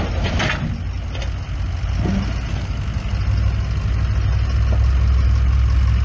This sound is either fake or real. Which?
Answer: real